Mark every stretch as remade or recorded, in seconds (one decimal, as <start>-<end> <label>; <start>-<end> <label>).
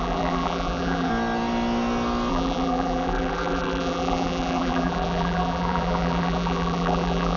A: 0.0-1.1 remade; 1.1-2.3 recorded; 2.3-7.4 remade